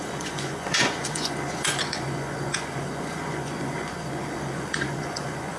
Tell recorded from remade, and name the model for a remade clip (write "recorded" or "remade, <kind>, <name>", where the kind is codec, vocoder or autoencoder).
remade, vocoder, Vocos